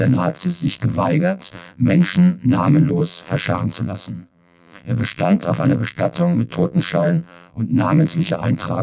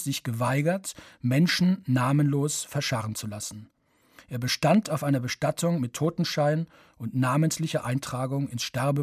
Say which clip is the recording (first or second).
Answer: second